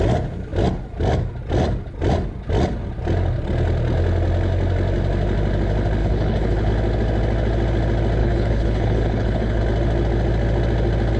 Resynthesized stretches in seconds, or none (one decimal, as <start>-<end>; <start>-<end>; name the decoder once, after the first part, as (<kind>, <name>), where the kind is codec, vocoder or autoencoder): 6.0-6.7 (codec, HILCodec); 8.2-9.6